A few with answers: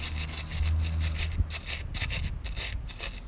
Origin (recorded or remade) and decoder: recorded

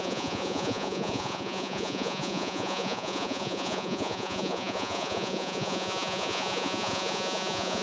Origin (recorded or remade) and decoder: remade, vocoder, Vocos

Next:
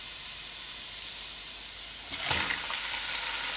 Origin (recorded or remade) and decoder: recorded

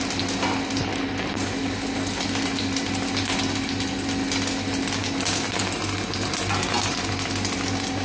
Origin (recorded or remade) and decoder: recorded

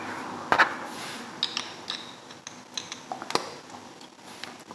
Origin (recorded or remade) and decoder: recorded